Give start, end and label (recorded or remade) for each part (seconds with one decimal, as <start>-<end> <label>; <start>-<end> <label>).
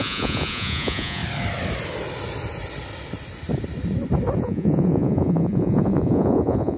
0.0-1.2 remade; 1.2-4.4 recorded; 4.4-6.8 remade